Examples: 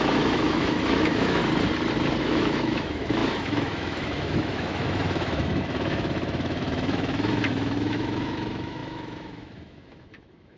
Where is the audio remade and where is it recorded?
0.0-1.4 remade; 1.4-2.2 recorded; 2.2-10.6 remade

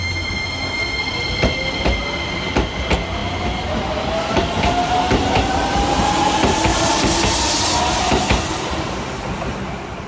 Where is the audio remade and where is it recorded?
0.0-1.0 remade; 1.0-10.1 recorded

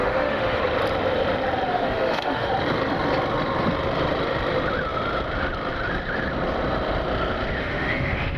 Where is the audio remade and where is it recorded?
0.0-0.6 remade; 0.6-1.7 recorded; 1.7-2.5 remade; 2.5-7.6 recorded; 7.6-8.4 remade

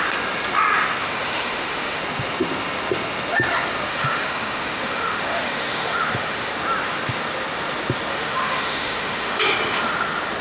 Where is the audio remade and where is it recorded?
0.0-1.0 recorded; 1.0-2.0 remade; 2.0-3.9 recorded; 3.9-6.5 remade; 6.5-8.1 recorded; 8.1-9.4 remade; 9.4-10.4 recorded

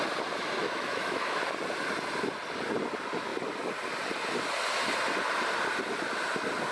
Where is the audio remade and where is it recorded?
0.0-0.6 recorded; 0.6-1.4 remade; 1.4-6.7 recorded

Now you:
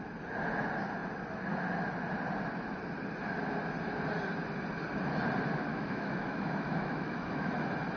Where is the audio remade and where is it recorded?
0.0-5.7 recorded; 5.7-7.5 remade; 7.5-8.0 recorded